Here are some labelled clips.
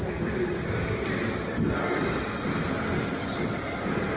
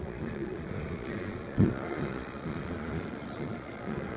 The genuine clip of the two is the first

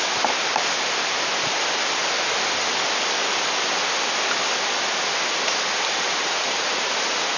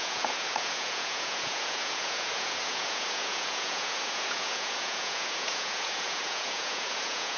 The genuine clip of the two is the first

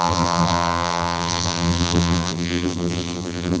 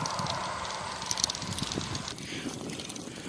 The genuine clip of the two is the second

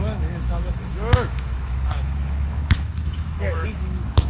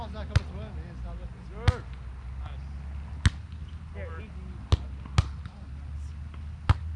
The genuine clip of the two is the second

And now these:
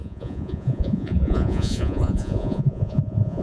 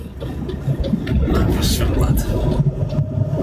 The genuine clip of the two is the second